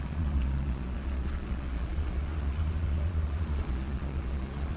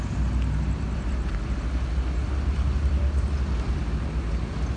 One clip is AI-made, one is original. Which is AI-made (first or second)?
first